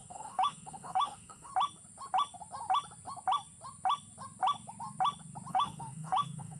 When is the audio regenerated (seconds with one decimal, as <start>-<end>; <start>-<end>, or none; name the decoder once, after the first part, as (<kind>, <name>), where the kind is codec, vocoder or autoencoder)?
0.0-1.5 (autoencoder, DAC-VAE); 5.5-6.6